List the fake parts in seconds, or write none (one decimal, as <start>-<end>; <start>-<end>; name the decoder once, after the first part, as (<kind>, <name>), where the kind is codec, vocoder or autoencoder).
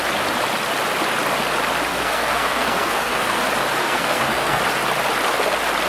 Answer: 1.9-3.4 (codec, SNAC); 3.8-4.6